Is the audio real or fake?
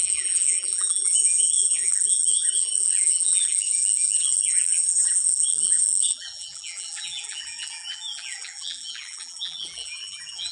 fake